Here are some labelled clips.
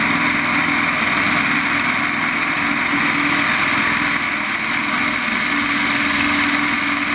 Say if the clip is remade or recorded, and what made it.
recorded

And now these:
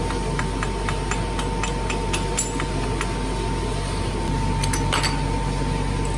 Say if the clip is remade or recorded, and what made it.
recorded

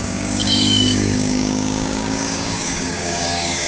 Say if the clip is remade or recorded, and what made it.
remade, codec, DAC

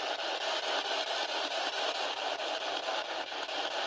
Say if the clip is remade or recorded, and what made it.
recorded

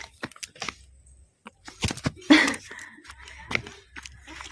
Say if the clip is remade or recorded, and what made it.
recorded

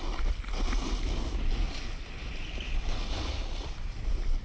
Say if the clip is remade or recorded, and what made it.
recorded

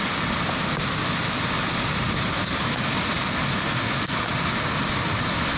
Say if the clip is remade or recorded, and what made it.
recorded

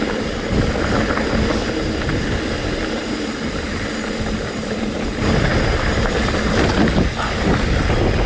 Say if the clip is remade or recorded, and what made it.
recorded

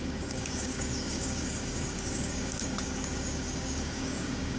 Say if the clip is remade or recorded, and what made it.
remade, codec, DAC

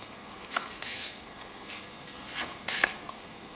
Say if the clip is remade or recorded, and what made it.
remade, codec, SNAC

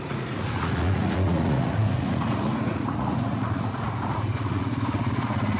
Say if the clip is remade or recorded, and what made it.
remade, vocoder, Vocos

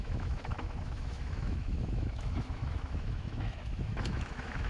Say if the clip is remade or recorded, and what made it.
remade, autoencoder, DAC-VAE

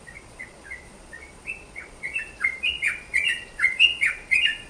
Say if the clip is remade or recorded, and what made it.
remade, vocoder, Vocos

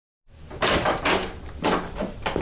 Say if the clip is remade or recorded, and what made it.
recorded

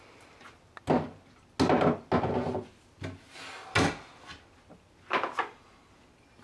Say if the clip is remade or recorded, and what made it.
recorded